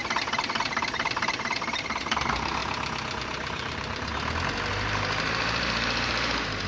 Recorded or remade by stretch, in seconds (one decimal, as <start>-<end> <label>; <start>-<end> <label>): 0.0-0.6 recorded; 0.6-2.6 remade; 2.6-3.2 recorded; 3.2-4.1 remade; 4.1-4.7 recorded; 4.7-6.7 remade